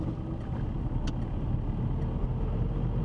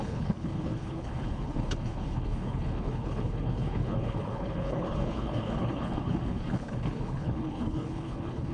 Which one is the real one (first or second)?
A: first